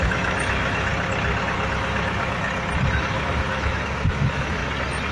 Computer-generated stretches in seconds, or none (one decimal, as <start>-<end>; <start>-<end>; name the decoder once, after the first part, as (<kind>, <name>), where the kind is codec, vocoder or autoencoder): 0.0-0.9 (autoencoder, DAC-VAE); 1.4-2.5; 3.1-4.6